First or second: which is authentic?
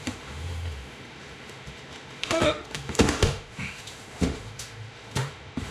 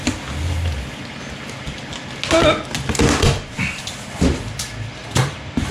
second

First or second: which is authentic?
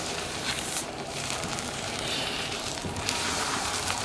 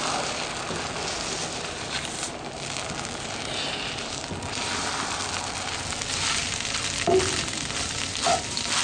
second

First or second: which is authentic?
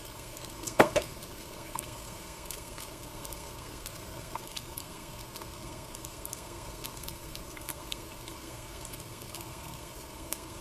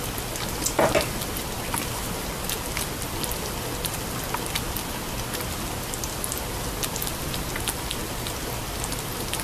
second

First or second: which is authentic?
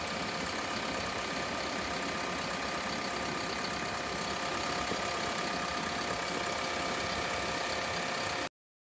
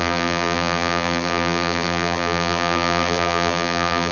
first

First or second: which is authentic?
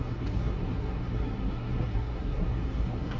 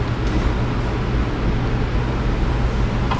second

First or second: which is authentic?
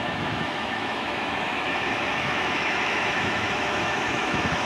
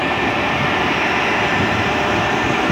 second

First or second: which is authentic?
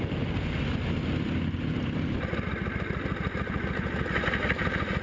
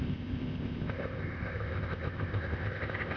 first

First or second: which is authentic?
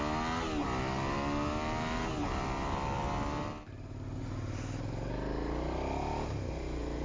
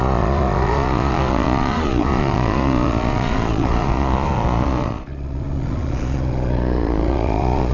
first